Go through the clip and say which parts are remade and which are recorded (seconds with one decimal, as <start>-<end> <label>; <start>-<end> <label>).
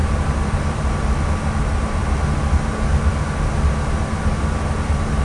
0.0-0.9 remade; 0.9-5.2 recorded